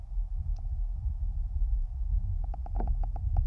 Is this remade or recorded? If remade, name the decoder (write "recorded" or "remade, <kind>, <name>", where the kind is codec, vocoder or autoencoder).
recorded